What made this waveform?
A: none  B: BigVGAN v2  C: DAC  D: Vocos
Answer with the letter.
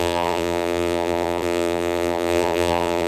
B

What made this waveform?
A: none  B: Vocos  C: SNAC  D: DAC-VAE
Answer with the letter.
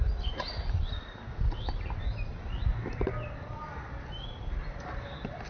A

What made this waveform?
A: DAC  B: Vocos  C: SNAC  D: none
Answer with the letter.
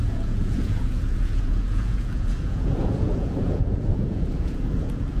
B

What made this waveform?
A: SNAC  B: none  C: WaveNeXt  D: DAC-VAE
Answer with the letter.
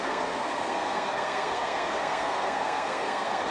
A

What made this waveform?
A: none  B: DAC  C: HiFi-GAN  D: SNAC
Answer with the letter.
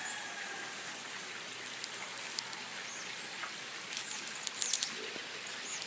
A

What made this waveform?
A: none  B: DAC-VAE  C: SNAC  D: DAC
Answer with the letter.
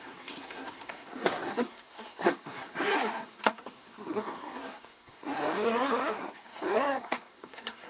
C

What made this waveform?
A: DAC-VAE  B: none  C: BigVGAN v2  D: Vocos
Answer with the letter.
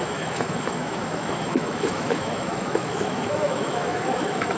A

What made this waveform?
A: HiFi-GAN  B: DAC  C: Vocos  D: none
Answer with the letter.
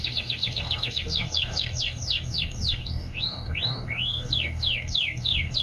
B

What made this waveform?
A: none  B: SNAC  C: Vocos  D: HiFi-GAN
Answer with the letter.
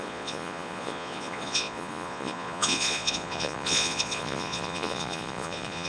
C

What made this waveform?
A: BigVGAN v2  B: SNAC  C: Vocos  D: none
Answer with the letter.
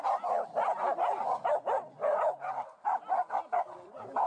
D